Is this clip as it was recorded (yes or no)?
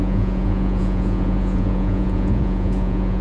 no